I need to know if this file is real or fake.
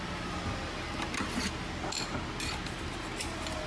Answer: real